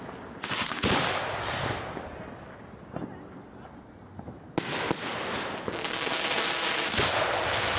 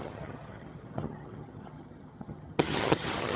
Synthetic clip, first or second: second